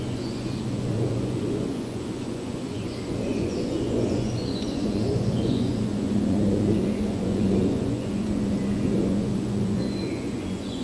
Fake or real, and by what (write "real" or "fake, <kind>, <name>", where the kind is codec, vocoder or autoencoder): fake, vocoder, Vocos